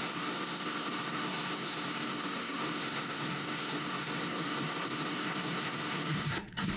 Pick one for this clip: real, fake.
fake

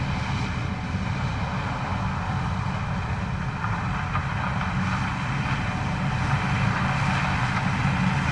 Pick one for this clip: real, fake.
real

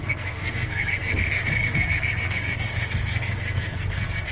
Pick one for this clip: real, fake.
fake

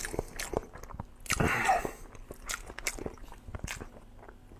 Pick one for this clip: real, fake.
real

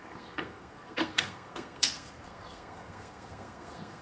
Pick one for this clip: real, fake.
fake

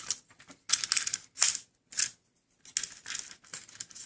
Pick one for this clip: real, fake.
real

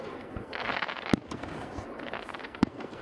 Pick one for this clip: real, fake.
fake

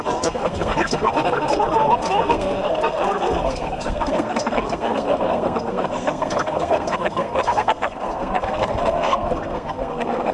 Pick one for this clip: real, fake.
fake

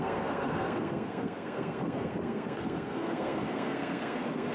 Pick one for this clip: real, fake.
fake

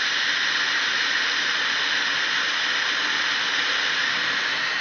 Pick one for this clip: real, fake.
real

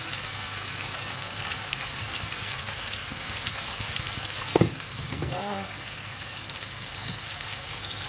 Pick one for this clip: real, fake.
fake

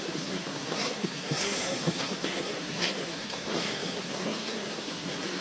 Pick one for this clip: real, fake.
fake